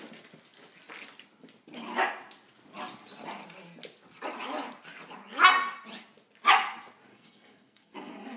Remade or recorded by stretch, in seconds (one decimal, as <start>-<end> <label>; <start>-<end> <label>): 0.0-7.1 recorded; 7.1-8.4 remade